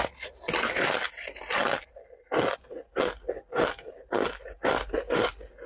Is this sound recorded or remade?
recorded